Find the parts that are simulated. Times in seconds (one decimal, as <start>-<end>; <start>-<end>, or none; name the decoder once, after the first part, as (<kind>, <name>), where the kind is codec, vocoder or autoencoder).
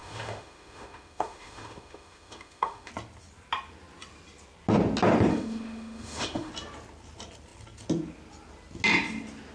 0.0-2.9 (autoencoder, DAC-VAE); 5.3-6.5